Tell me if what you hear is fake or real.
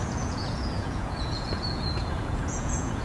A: fake